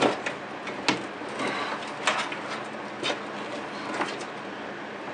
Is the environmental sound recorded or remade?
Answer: recorded